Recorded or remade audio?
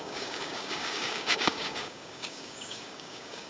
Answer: remade